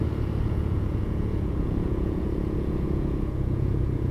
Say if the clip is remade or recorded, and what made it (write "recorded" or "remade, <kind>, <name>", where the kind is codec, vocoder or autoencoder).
remade, vocoder, Vocos